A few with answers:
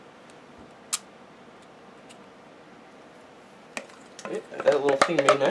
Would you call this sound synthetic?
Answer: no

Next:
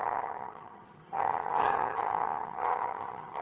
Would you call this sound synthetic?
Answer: yes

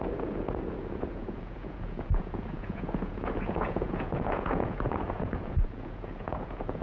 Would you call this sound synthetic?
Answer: yes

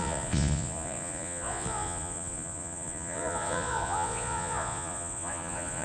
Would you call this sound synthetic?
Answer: yes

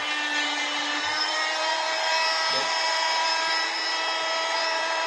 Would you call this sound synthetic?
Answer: yes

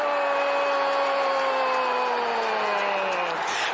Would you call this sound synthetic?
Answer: no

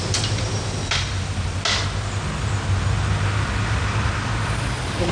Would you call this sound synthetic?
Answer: no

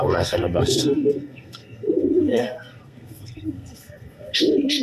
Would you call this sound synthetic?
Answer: yes